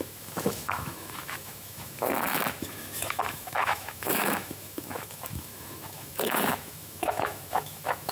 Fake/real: fake